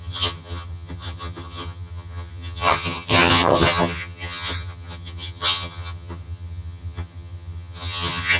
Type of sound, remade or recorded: remade